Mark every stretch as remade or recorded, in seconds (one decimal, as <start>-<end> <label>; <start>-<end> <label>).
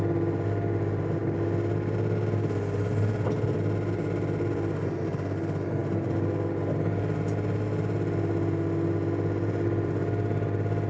0.0-10.9 recorded